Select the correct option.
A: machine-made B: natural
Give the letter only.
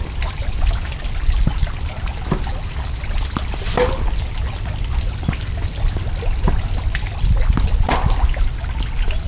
B